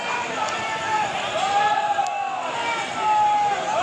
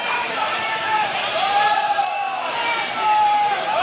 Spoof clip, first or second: second